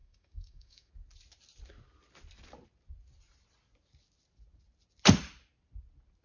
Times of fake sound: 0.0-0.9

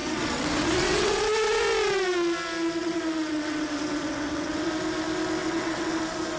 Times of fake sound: 0.0-1.2; 2.8-4.7; 5.4-6.0

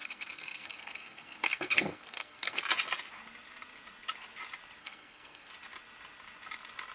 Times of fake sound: 0.0-2.6; 4.8-5.5